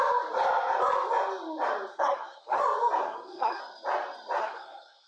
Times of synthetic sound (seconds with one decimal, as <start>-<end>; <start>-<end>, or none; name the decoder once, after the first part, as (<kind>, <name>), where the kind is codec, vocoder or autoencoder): 1.9-2.6 (codec, SNAC); 3.0-3.6; 4.4-5.1